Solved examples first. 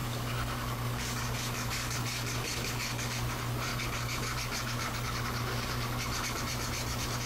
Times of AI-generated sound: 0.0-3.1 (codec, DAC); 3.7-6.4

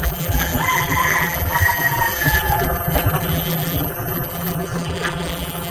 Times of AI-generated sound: 0.0-5.7 (vocoder, BigVGAN v2)